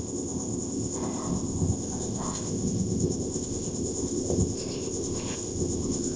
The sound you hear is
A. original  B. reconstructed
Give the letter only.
B